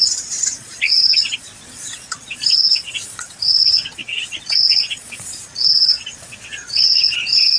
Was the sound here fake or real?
fake